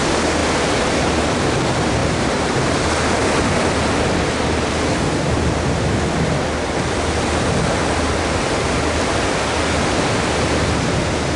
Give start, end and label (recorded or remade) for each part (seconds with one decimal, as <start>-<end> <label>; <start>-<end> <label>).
0.0-2.0 recorded; 2.0-2.9 remade; 2.9-11.4 recorded